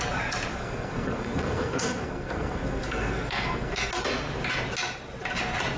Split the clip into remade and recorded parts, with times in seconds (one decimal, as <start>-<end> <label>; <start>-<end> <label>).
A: 0.0-0.5 recorded; 0.5-4.0 remade; 4.0-5.8 recorded